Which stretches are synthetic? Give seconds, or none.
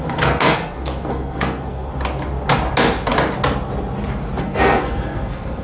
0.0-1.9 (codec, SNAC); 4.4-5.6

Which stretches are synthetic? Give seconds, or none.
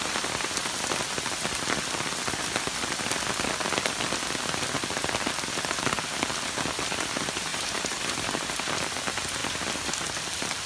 7.5-8.5 (vocoder, BigVGAN v2)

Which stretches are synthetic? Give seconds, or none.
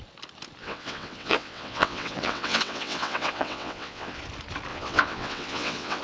0.6-4.2 (vocoder, WaveNeXt); 4.7-6.0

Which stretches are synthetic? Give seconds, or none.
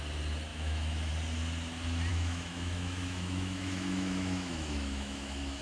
0.5-1.1 (autoencoder, DAC-VAE); 2.1-5.6